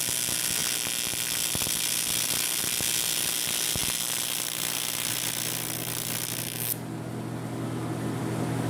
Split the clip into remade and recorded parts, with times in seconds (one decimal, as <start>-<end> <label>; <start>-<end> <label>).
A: 0.0-8.7 recorded